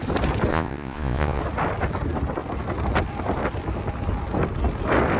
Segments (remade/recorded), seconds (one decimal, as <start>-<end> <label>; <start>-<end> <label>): 0.0-0.5 recorded; 0.5-1.4 remade; 1.4-5.2 recorded